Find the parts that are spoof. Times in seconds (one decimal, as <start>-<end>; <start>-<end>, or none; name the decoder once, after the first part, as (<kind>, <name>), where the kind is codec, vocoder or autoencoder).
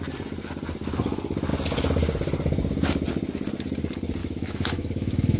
4.2-5.4 (autoencoder, DAC-VAE)